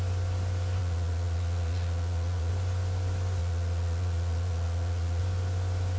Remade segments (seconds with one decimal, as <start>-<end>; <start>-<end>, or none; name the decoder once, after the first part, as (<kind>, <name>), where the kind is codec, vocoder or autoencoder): 0.8-2.5 (vocoder, Vocos); 3.4-5.2